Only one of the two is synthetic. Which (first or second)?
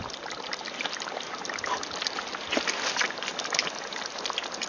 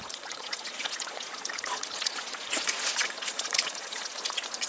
second